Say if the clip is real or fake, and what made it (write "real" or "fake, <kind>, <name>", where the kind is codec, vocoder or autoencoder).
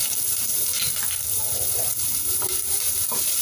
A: fake, vocoder, BigVGAN v2